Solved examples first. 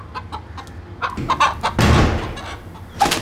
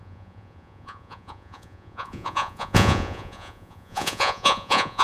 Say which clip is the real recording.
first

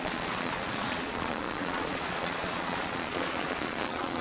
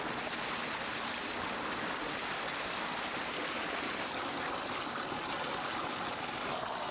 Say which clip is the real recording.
second